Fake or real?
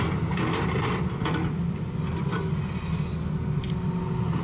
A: real